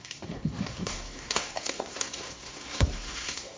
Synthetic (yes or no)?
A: yes